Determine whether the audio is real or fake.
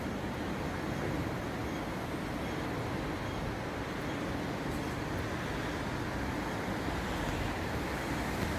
real